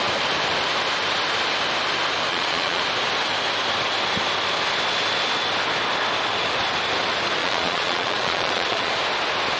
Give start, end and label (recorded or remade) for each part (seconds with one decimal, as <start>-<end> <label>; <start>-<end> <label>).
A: 0.0-2.3 recorded; 2.3-2.8 remade; 2.8-7.4 recorded; 7.4-8.9 remade; 8.9-9.6 recorded

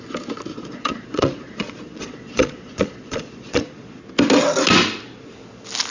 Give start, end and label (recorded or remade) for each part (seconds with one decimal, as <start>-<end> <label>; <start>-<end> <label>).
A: 0.0-0.5 recorded; 0.5-4.0 remade; 4.0-5.9 recorded